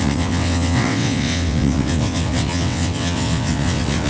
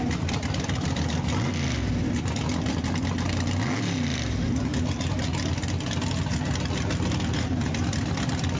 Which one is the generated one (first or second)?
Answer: first